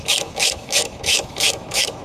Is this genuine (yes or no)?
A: no